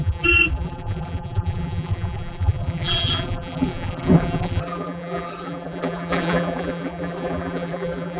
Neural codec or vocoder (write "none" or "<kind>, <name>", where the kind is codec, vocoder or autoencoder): vocoder, BigVGAN v2